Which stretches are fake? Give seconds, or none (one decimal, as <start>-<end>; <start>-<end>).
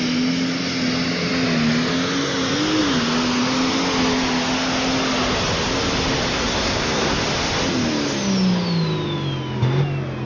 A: 6.3-7.2